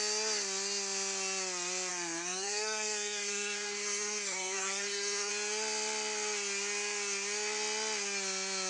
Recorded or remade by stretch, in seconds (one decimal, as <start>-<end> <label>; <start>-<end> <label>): 0.0-1.9 recorded; 1.9-5.3 remade; 5.3-8.7 recorded